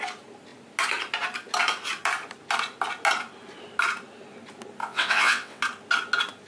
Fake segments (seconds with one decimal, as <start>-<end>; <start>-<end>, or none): 4.8-5.6